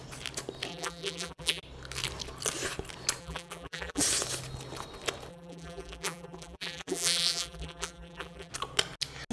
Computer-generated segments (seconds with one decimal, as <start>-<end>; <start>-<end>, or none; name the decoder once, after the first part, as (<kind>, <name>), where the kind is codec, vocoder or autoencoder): 0.7-1.6 (vocoder, BigVGAN v2); 3.2-4.0; 5.3-8.5